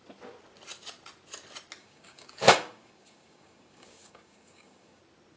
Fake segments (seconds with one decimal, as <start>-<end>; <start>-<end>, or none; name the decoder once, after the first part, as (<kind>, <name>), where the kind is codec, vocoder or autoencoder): 1.8-5.0 (codec, DAC)